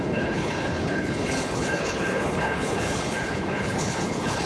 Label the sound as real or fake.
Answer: fake